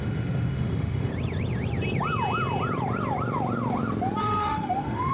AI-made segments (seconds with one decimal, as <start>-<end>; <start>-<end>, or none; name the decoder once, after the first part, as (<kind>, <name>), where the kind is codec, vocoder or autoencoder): 0.0-1.1 (autoencoder, DAC-VAE); 4.2-5.1

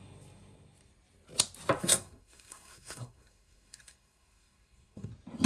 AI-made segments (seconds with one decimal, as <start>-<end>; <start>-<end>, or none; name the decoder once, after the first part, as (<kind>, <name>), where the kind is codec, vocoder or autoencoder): 1.8-5.1 (codec, SNAC)

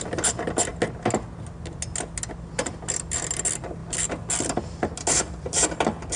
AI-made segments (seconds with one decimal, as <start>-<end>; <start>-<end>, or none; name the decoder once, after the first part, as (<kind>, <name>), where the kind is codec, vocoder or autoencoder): none

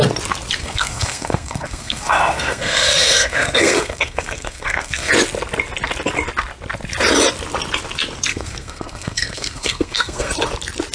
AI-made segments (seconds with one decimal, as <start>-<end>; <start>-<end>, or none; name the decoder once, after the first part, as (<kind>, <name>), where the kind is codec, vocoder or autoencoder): 0.6-5.1 (codec, SNAC); 8.3-10.3

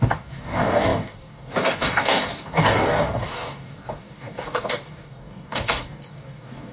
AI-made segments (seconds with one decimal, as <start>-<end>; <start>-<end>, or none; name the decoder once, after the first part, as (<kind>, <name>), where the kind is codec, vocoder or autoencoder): 0.0-6.7 (codec, DAC)

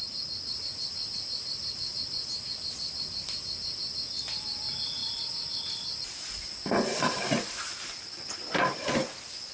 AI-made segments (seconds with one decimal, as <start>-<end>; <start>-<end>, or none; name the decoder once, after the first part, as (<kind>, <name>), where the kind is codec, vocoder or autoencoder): 5.0-7.2 (vocoder, BigVGAN v2)

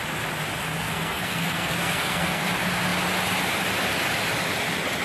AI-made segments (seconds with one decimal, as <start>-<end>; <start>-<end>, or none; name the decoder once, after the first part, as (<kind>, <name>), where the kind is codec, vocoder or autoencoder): 0.8-2.5 (codec, SNAC)